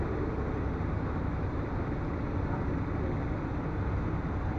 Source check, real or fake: real